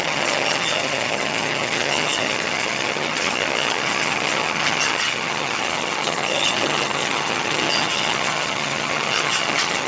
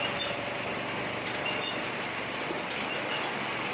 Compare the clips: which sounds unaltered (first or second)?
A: second